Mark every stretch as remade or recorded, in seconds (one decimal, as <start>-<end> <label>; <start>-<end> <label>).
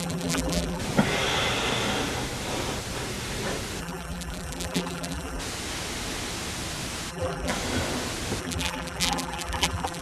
0.0-0.8 remade; 0.8-3.8 recorded; 3.8-5.4 remade; 5.4-7.1 recorded; 7.1-7.5 remade; 7.5-8.4 recorded; 8.4-10.0 remade